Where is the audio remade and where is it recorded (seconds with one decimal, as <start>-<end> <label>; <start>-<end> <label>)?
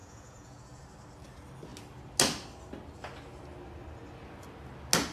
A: 0.0-0.8 remade; 0.8-5.1 recorded